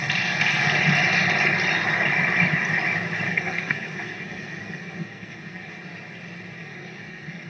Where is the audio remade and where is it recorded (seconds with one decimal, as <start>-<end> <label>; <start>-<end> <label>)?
0.0-3.3 recorded; 3.3-5.7 remade; 5.7-6.6 recorded; 6.6-7.5 remade